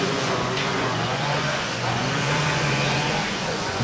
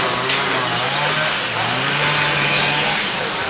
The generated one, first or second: first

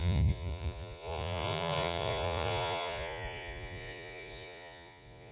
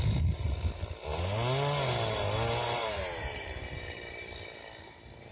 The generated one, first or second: first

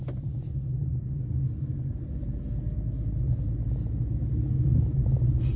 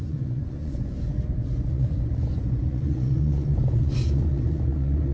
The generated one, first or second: second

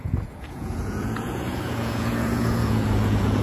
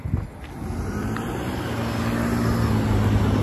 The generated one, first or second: first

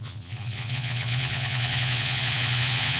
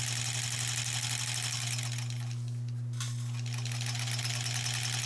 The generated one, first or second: first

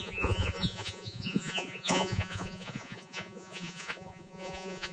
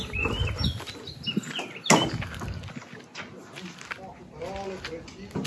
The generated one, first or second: first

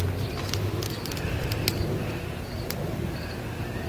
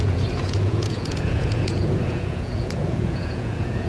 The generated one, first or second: second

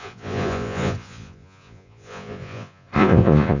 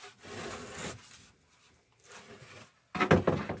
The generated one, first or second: first